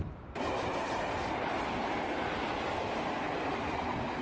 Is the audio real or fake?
real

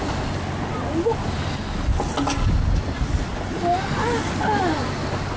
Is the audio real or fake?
real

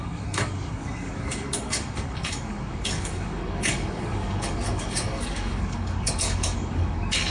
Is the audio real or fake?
fake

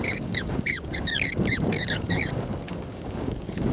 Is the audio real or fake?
fake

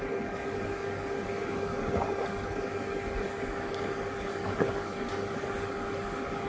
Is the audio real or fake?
fake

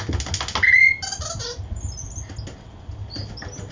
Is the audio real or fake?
real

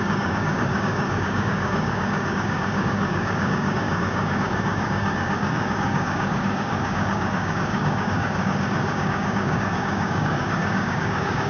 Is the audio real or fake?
fake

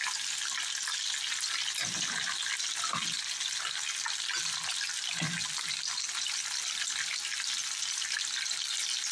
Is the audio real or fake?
real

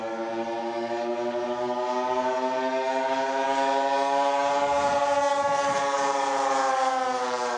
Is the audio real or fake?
fake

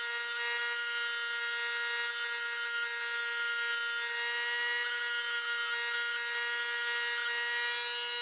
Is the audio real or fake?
real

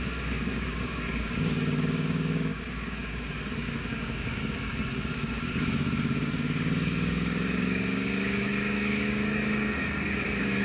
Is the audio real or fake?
fake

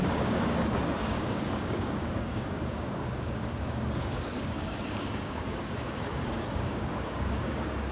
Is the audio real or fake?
fake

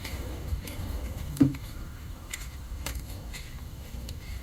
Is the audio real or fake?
fake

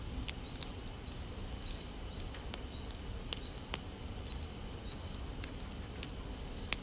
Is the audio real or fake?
real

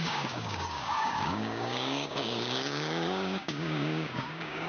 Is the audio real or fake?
fake